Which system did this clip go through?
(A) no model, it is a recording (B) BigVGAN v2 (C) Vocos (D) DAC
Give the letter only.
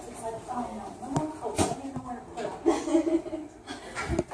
A